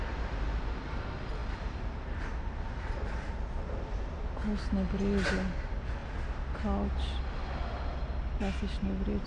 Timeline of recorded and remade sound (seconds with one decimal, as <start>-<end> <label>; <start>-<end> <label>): 0.0-9.3 recorded